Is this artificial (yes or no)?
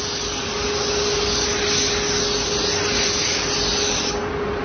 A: no